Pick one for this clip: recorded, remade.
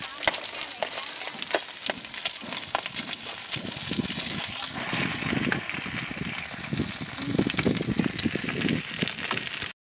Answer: recorded